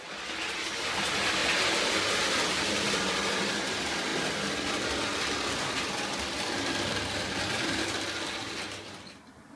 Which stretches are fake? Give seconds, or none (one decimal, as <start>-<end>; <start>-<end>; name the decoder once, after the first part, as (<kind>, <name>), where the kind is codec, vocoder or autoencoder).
none